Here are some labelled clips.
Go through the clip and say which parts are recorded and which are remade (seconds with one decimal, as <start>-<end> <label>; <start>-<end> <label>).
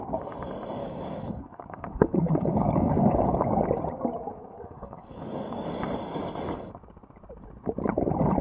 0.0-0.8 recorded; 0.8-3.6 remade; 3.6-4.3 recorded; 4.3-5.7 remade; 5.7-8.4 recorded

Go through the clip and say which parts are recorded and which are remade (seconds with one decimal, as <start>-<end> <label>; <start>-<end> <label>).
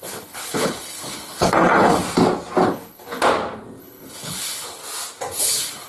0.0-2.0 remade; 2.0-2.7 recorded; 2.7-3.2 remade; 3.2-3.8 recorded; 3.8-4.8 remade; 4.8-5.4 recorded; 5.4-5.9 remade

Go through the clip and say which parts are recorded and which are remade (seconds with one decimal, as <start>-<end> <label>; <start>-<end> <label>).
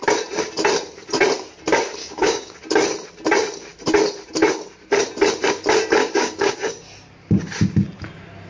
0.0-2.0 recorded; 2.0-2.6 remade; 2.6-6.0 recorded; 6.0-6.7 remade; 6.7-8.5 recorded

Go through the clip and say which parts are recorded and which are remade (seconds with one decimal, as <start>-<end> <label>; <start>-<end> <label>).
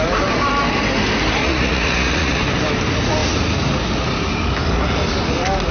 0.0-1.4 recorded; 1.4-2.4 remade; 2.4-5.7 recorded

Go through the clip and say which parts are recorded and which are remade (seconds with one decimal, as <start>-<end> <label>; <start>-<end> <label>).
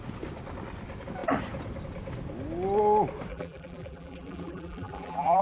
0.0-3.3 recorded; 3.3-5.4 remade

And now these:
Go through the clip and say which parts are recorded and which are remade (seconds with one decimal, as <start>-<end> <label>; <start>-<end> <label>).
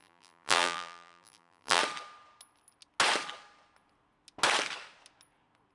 0.0-1.8 remade; 1.8-5.7 recorded